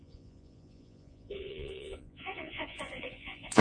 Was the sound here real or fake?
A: fake